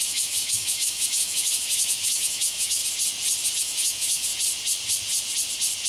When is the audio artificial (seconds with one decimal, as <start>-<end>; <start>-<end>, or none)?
0.0-2.8; 3.6-4.3